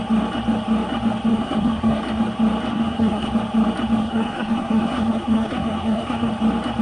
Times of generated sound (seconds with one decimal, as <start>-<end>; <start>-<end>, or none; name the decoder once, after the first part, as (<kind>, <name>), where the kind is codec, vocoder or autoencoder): 1.3-2.0 (codec, SNAC); 2.7-3.3; 4.0-6.3